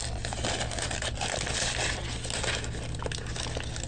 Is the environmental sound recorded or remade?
recorded